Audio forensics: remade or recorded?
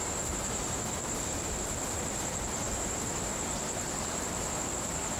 remade